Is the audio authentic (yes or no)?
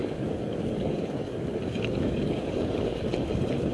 no